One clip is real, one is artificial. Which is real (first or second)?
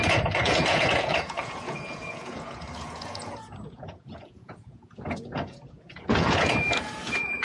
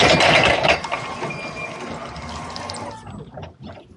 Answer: second